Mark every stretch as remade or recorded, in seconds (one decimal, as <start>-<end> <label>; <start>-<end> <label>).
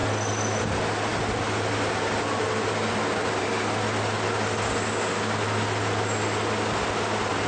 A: 0.0-7.5 recorded